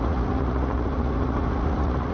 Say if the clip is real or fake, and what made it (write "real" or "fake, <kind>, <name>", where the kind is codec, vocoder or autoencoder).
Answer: fake, vocoder, Vocos